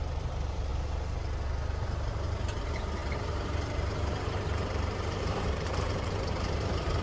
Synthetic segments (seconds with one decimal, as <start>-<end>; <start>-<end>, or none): 0.0-0.7; 2.1-7.0